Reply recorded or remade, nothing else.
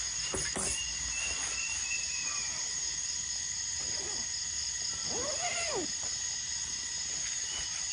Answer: recorded